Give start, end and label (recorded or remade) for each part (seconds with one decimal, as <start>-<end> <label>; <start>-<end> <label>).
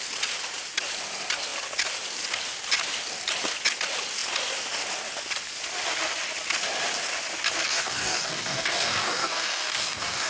0.0-7.6 recorded; 7.6-10.3 remade